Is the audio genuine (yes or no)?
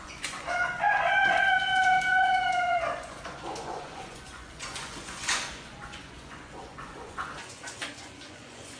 no